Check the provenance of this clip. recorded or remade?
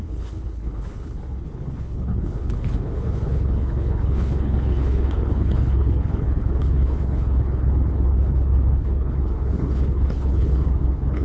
remade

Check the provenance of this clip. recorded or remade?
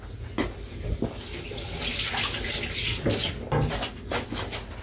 recorded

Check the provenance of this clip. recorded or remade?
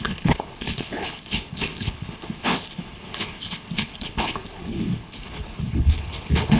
remade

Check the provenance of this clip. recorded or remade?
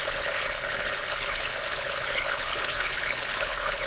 remade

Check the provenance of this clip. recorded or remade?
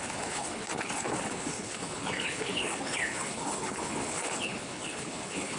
remade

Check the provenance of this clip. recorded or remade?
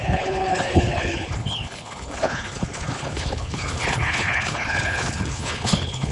remade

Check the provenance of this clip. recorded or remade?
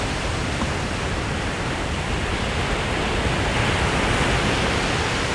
recorded